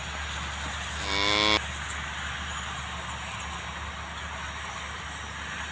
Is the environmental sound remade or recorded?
recorded